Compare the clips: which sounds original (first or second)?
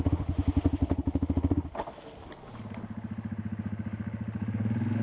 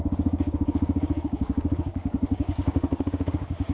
first